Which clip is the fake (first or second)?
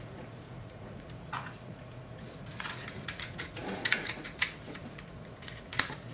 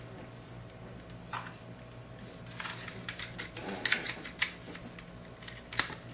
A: first